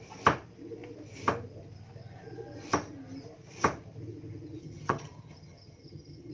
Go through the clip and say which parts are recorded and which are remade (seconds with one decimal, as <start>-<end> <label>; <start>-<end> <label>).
0.0-4.6 recorded; 4.6-6.3 remade